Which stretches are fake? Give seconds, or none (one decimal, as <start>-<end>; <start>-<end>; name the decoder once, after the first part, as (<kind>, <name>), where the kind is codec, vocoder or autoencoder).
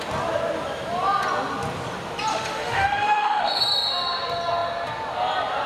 2.3-3.6 (autoencoder, DAC-VAE)